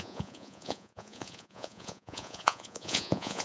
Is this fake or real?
fake